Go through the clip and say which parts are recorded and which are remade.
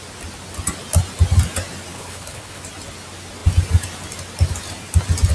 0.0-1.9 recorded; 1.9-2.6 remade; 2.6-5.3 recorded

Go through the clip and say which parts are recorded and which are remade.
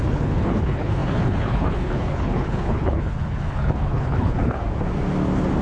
0.0-4.6 remade; 4.6-5.6 recorded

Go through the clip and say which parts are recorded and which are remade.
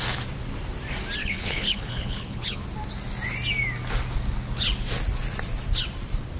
0.0-1.2 recorded; 1.2-2.6 remade; 2.6-6.4 recorded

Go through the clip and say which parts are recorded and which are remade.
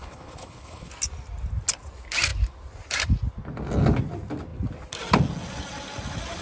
0.0-0.9 remade; 0.9-6.4 recorded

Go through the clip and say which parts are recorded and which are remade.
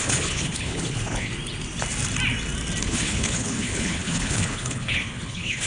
0.0-1.3 remade; 1.3-2.8 recorded; 2.8-5.7 remade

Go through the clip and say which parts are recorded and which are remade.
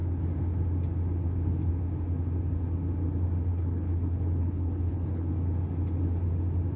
0.0-3.5 recorded; 3.5-5.3 remade; 5.3-6.8 recorded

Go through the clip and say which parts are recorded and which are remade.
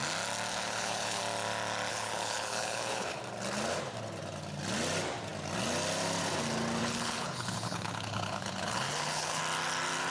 0.0-0.5 recorded; 0.5-1.2 remade; 1.2-1.9 recorded; 1.9-3.2 remade; 3.2-6.8 recorded; 6.8-9.4 remade; 9.4-10.1 recorded